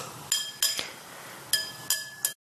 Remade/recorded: recorded